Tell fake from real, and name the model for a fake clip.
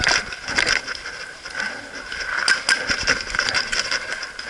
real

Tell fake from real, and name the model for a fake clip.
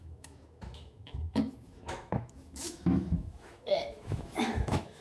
fake, autoencoder, DAC-VAE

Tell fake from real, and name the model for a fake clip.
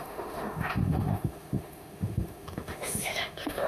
fake, autoencoder, DAC-VAE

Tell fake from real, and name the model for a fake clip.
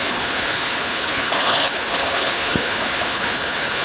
fake, codec, HILCodec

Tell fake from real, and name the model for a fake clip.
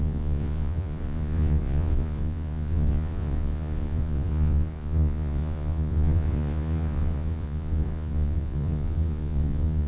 fake, vocoder, Vocos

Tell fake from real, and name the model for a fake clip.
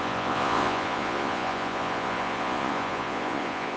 fake, vocoder, Vocos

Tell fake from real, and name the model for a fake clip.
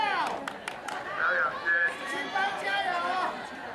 fake, vocoder, BigVGAN v2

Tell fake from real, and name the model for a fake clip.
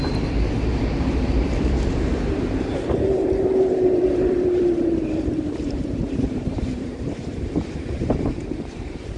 fake, vocoder, BigVGAN v2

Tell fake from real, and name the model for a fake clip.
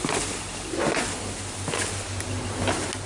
real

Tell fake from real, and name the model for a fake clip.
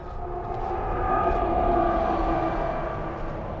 real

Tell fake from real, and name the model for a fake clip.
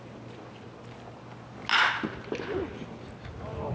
real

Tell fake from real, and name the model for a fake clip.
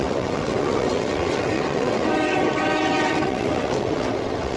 fake, vocoder, WaveNeXt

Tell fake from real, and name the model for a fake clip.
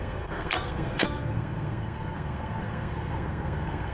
fake, codec, SNAC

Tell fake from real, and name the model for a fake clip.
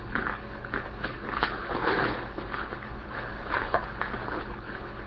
fake, codec, HILCodec